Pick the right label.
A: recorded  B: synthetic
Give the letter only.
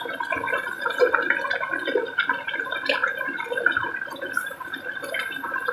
A